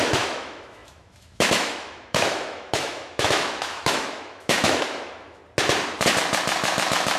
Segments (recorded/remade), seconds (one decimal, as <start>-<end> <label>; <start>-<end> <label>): 0.0-5.4 remade; 5.4-6.4 recorded; 6.4-7.2 remade